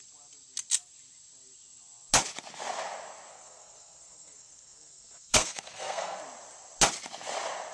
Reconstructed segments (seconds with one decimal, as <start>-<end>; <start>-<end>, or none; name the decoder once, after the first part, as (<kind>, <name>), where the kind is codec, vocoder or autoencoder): 3.3-6.2 (codec, SNAC)